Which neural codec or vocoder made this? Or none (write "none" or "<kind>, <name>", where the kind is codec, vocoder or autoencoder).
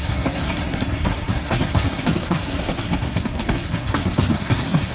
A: codec, SNAC